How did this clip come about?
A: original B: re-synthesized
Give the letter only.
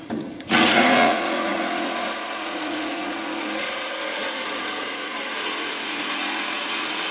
B